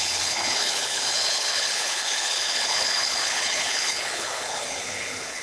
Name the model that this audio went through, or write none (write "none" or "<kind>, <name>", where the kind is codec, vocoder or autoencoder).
codec, HILCodec